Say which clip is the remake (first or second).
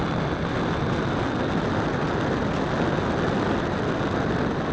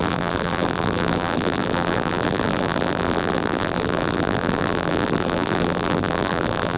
second